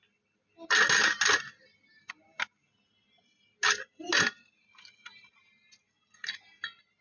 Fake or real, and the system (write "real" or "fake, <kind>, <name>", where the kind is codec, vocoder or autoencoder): real